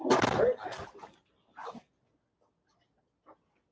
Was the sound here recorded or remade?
recorded